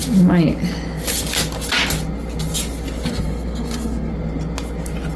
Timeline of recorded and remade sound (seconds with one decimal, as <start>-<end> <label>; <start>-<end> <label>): 0.0-3.1 recorded; 3.1-4.1 remade; 4.1-5.2 recorded